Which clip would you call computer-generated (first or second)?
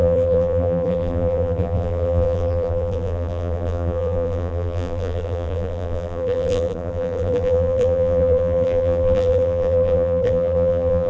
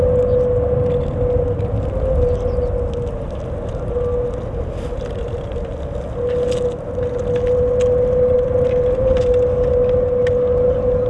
first